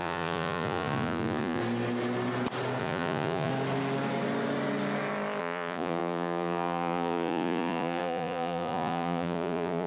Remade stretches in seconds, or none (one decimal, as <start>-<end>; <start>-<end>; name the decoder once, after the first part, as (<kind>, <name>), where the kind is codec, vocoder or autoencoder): 0.0-1.6 (vocoder, Vocos); 2.8-3.5; 5.4-9.9